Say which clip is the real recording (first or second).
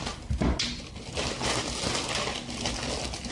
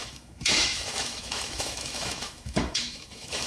first